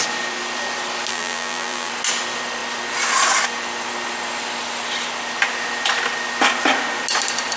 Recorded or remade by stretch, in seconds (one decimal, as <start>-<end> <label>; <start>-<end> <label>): 0.0-1.1 recorded; 1.1-1.9 remade; 1.9-7.6 recorded